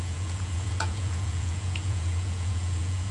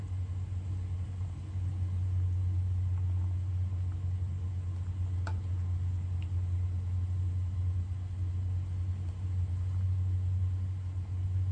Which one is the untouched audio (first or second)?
second